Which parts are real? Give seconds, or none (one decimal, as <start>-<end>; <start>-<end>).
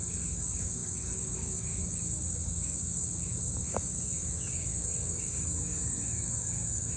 none